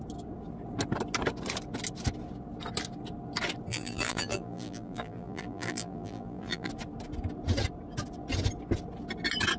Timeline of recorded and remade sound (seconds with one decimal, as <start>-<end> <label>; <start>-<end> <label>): 0.0-3.7 recorded; 3.7-6.7 remade; 6.7-9.6 recorded